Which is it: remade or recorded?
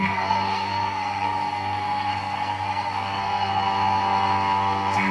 remade